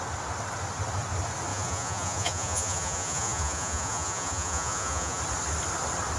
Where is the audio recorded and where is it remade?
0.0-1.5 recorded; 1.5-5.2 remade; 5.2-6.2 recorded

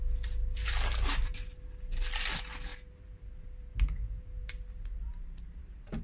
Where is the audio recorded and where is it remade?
0.0-2.7 recorded; 2.7-6.0 remade

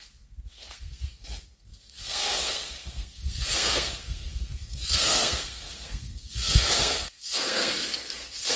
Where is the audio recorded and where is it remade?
0.0-8.6 remade

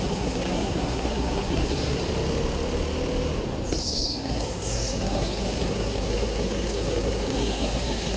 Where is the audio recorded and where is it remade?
0.0-2.0 remade; 2.0-3.8 recorded; 3.8-8.2 remade

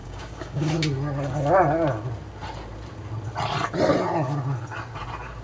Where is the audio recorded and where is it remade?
0.0-0.7 remade; 0.7-5.4 recorded

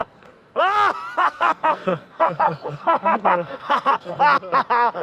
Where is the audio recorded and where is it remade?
0.0-0.6 remade; 0.6-1.2 recorded; 1.2-4.2 remade; 4.2-5.0 recorded